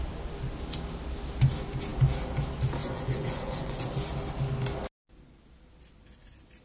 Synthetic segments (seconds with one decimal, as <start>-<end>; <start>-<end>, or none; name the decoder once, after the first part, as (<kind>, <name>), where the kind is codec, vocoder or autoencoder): 2.8-3.8 (vocoder, Vocos)